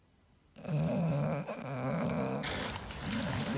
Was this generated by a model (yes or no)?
no